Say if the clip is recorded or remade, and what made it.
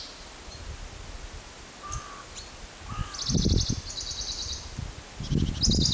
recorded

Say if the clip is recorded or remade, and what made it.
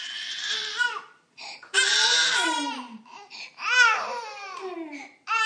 remade, vocoder, BigVGAN v2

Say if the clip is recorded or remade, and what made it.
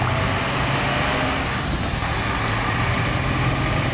recorded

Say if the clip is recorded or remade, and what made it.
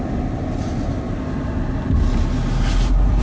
recorded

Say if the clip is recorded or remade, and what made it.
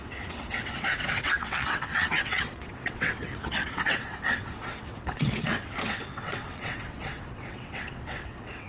remade, vocoder, WaveNeXt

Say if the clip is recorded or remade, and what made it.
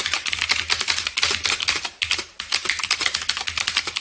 recorded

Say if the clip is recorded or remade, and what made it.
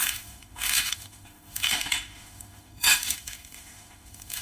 remade, autoencoder, DAC-VAE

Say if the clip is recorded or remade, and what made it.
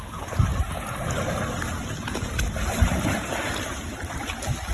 recorded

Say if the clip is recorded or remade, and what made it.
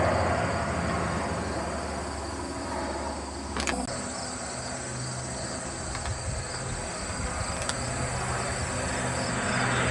recorded